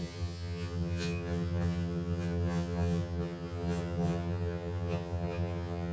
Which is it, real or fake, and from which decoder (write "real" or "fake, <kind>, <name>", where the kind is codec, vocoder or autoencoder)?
fake, vocoder, HiFi-GAN